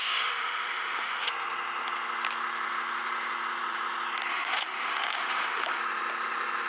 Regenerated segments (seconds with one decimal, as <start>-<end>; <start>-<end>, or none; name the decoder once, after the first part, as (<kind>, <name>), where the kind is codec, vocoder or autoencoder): 0.0-1.3 (autoencoder, DAC-VAE); 4.3-5.8